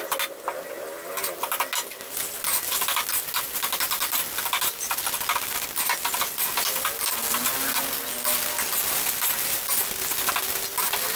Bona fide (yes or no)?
yes